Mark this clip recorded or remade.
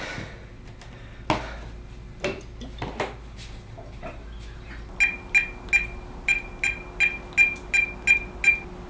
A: recorded